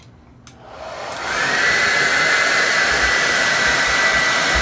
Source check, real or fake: real